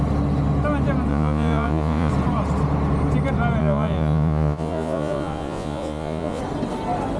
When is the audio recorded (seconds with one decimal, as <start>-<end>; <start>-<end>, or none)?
0.0-1.1; 2.1-3.6; 6.4-7.2